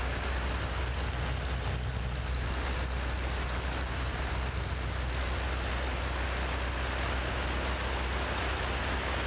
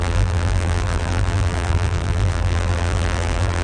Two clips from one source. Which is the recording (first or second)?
first